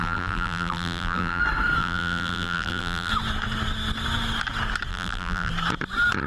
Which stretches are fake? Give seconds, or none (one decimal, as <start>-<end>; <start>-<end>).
0.0-1.4; 1.8-3.1; 4.9-5.5

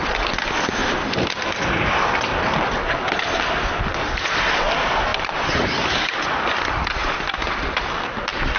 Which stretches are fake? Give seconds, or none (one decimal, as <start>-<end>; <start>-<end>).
0.8-2.4; 5.1-6.5; 7.0-7.5

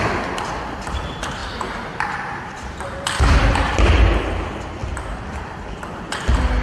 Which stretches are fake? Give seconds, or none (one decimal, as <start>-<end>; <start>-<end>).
1.4-3.9; 4.8-5.7

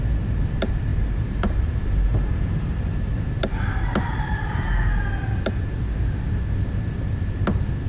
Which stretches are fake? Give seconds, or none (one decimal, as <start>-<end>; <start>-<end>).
0.9-2.7

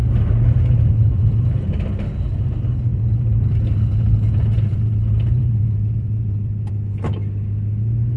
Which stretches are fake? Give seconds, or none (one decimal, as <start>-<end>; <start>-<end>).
0.0-1.6; 2.9-6.7

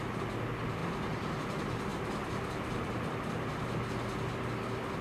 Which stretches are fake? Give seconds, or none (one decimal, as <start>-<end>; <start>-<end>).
none